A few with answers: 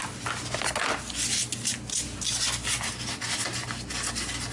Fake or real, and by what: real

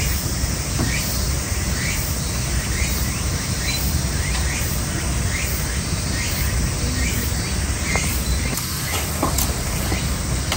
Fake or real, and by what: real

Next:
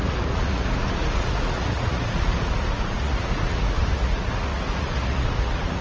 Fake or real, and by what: fake, vocoder, Vocos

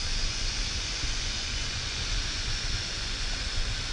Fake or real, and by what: fake, vocoder, Vocos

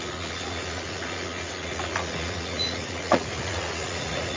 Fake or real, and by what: fake, vocoder, Vocos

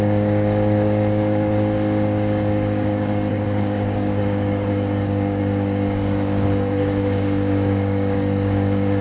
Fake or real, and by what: fake, codec, DAC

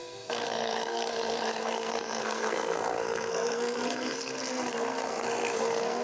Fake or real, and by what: fake, codec, SNAC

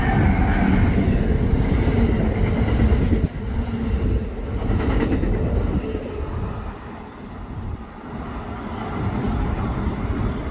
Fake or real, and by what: real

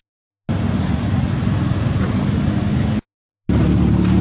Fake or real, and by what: real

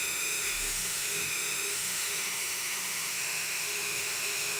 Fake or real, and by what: fake, autoencoder, DAC-VAE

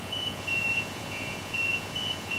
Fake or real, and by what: fake, vocoder, Vocos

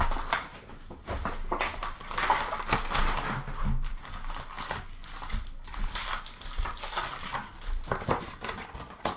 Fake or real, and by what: real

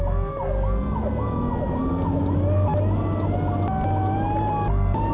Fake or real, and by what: real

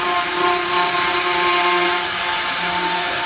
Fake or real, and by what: fake, vocoder, BigVGAN v2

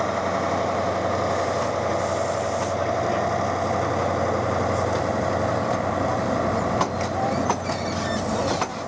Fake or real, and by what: real